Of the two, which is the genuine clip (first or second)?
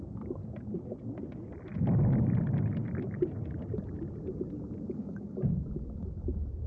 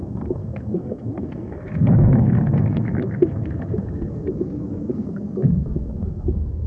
first